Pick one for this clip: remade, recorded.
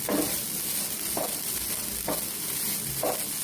recorded